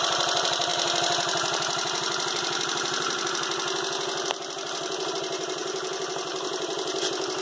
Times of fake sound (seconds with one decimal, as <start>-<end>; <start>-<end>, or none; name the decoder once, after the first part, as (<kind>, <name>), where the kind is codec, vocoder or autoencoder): 0.0-0.7 (vocoder, BigVGAN v2); 5.1-7.4